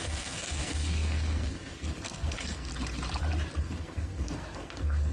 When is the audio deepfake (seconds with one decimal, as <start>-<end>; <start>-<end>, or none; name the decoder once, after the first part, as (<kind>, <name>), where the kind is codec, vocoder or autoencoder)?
0.0-2.7 (codec, SNAC); 3.6-5.1